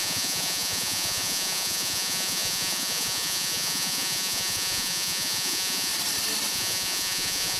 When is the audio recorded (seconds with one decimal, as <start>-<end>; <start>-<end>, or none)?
5.9-6.5